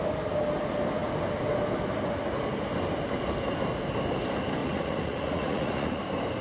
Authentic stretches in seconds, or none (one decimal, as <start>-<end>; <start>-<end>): 0.0-4.6; 6.0-6.4